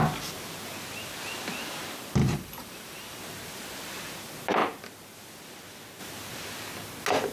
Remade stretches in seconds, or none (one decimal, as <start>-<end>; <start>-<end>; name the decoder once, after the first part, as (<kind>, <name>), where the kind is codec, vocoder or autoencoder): 2.2-3.2 (vocoder, BigVGAN v2)